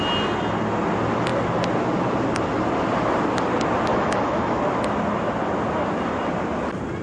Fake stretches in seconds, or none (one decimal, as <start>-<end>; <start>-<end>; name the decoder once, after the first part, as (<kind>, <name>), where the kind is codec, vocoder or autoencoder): 3.9-4.6 (autoencoder, DAC-VAE)